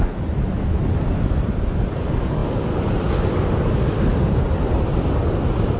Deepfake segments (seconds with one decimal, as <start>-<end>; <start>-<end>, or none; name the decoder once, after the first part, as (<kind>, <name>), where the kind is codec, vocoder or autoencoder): none